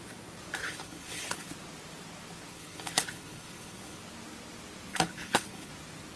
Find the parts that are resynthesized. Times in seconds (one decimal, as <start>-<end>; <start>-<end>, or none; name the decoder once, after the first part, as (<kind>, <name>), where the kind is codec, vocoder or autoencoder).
0.6-1.5 (codec, HILCodec); 2.5-4.0; 4.9-5.7